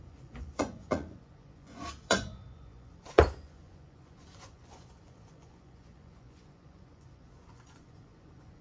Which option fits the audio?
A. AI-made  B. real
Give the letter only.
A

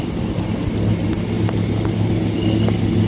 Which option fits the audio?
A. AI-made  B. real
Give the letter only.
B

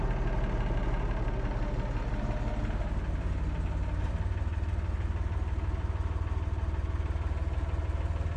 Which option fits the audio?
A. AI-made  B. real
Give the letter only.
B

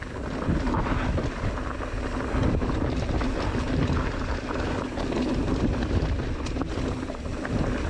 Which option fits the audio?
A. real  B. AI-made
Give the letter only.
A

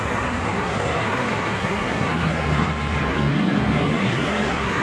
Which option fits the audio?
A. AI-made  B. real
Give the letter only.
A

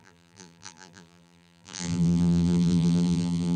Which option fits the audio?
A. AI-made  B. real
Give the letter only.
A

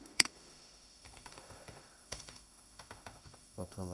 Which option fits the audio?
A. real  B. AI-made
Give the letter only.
B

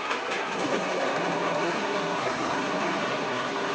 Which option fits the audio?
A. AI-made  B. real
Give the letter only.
A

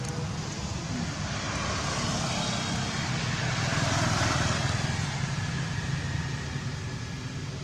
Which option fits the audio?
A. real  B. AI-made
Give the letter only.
A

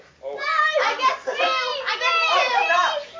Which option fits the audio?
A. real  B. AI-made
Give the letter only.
A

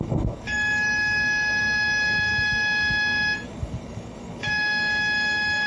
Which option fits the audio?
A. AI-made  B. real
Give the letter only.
A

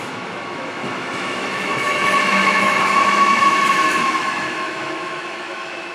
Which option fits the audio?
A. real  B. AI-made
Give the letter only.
B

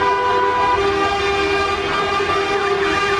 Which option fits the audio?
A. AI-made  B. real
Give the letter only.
B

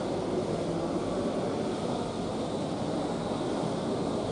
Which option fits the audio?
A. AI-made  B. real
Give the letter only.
B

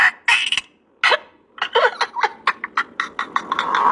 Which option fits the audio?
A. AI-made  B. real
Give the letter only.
B